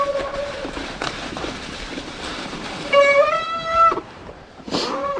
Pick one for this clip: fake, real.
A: fake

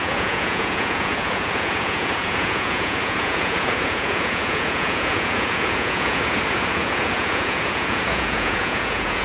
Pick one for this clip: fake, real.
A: fake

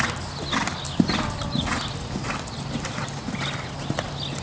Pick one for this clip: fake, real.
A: real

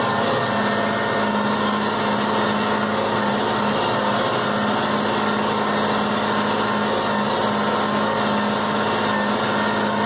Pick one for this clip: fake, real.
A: real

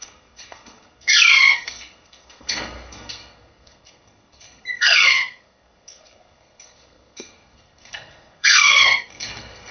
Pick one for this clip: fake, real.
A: fake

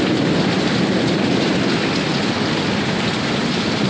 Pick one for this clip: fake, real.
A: real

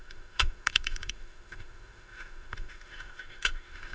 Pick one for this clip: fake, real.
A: fake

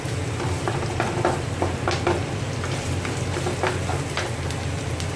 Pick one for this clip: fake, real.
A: real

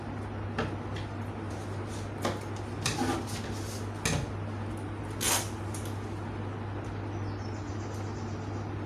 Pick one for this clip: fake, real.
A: real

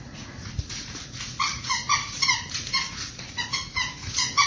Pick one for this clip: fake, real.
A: fake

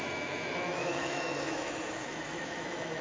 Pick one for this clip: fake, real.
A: fake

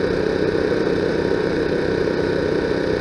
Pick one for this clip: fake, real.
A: fake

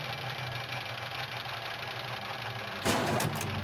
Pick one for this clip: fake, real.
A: real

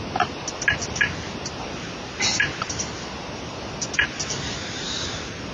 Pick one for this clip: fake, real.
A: real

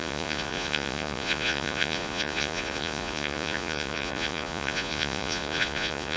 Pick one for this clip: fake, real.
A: fake